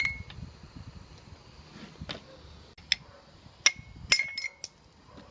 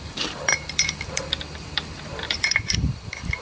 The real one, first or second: first